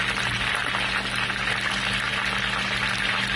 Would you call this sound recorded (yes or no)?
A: yes